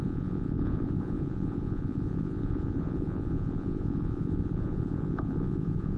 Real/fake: fake